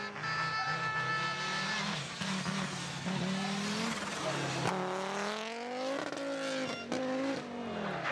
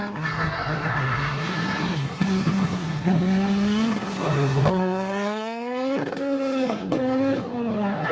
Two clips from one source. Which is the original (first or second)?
first